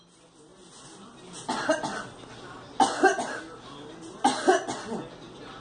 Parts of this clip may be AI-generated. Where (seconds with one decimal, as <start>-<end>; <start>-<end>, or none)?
none